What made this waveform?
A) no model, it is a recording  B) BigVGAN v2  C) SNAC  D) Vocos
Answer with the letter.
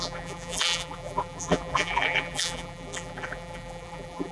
B